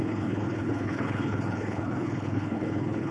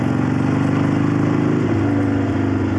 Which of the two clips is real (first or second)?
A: second